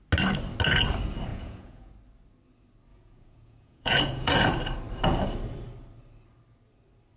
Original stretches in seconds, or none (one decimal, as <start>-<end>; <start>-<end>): 0.0-1.3; 1.9-2.9; 4.3-7.2